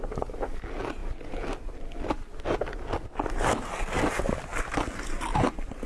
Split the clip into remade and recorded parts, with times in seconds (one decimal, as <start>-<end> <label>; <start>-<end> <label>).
0.0-5.9 recorded